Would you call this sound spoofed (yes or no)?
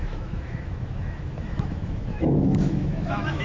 yes